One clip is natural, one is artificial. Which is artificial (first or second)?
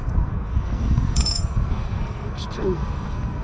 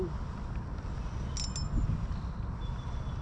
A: first